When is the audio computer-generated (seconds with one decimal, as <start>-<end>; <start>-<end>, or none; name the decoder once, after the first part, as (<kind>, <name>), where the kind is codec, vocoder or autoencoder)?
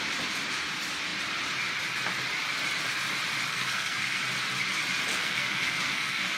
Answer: 3.5-4.2 (codec, SNAC); 5.1-6.4